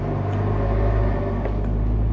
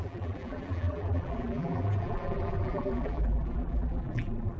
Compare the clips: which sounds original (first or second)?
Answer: first